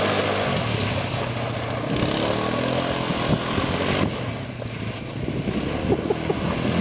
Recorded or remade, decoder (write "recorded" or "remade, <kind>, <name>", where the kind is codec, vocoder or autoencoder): recorded